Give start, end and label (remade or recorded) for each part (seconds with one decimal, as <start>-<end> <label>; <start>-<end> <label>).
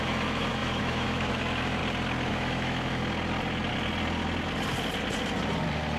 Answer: 0.0-1.8 remade; 1.8-2.3 recorded; 2.3-3.0 remade; 3.0-6.0 recorded